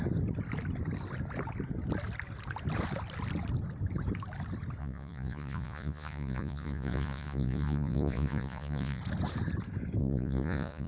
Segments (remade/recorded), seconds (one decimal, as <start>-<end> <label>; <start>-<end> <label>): 0.0-4.8 recorded; 4.8-9.0 remade; 9.0-10.0 recorded; 10.0-10.9 remade